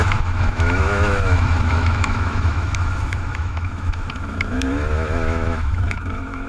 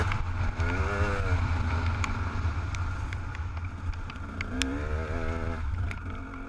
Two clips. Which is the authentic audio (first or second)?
second